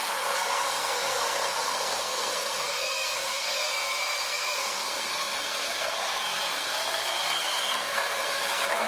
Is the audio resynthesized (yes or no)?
yes